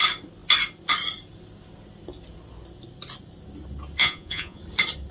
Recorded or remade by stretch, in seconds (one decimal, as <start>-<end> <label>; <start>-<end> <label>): 0.0-4.0 recorded; 4.0-4.6 remade; 4.6-5.1 recorded